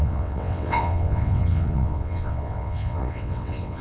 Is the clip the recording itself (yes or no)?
no